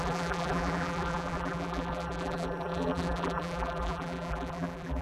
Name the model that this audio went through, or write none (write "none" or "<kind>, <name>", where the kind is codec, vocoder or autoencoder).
vocoder, BigVGAN v2